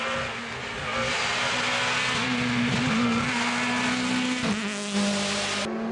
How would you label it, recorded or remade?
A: recorded